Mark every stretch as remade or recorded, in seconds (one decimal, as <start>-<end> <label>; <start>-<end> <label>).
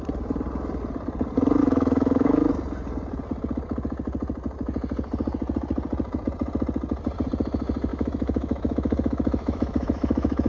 0.0-1.6 recorded; 1.6-2.5 remade; 2.5-7.9 recorded; 7.9-10.5 remade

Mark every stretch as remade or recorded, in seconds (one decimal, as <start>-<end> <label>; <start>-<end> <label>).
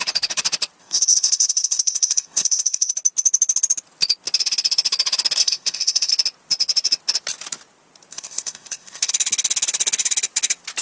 0.0-0.8 recorded; 0.8-2.9 remade; 2.9-5.4 recorded; 5.4-6.1 remade; 6.1-8.1 recorded; 8.1-9.1 remade; 9.1-10.8 recorded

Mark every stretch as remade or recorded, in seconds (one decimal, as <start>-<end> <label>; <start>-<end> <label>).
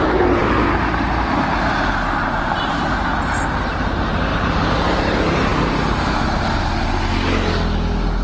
0.0-8.2 recorded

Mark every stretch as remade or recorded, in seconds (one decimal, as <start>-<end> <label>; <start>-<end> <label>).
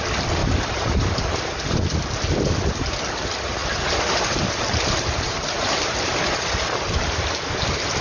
0.0-0.4 recorded; 0.4-1.8 remade; 1.8-3.6 recorded; 3.6-7.1 remade; 7.1-8.0 recorded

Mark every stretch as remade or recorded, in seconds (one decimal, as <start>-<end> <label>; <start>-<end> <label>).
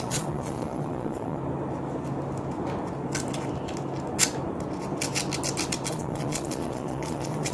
0.0-1.4 remade; 1.4-5.9 recorded; 5.9-7.5 remade